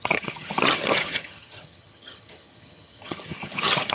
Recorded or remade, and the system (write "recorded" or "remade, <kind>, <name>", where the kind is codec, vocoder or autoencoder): remade, vocoder, HiFi-GAN